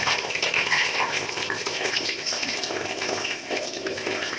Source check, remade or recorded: remade